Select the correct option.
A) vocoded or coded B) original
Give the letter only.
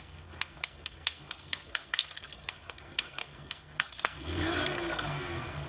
A